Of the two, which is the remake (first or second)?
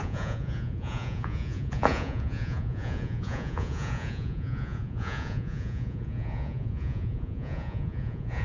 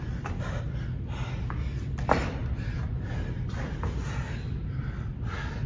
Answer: first